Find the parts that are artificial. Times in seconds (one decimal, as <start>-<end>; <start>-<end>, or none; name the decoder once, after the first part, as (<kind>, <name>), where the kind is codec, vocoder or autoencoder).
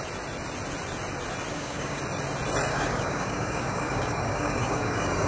1.5-2.0 (codec, DAC); 2.7-5.3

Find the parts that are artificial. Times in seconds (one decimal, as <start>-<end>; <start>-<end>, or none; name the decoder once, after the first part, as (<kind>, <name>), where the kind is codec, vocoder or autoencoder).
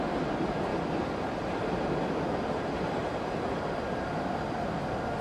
0.7-2.2 (vocoder, BigVGAN v2); 3.0-3.6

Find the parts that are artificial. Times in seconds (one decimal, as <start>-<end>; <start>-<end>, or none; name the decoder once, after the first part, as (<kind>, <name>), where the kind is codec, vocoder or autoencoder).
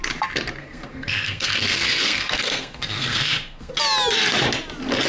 0.6-3.7 (codec, SNAC)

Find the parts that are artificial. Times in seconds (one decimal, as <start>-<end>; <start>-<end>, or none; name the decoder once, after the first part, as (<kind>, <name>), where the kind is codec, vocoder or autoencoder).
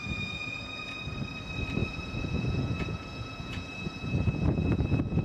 0.0-1.1 (vocoder, Vocos); 1.8-5.2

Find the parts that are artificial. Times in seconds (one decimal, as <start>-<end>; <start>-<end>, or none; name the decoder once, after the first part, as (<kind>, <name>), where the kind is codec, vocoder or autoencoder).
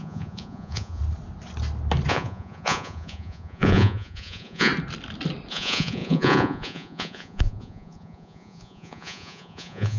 0.0-1.0 (vocoder, Vocos); 2.1-4.7; 5.5-10.0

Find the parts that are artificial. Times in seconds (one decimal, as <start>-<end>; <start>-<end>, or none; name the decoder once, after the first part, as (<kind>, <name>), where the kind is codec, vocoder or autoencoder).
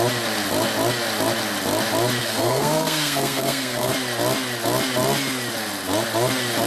2.2-3.9 (codec, SNAC)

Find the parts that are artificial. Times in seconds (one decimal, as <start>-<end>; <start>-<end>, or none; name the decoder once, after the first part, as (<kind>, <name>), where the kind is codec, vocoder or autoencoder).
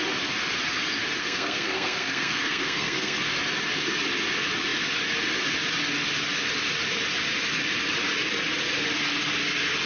1.2-3.2 (codec, SNAC)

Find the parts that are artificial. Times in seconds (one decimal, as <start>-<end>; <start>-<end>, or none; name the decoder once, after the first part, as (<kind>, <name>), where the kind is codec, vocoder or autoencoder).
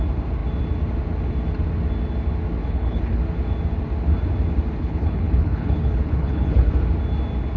2.6-3.2 (codec, HILCodec); 4.8-6.7